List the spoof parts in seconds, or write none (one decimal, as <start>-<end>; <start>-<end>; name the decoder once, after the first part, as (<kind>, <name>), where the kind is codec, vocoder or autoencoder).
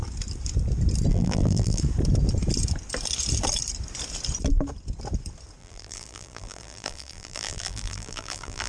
1.1-1.8 (vocoder, BigVGAN v2); 5.6-8.7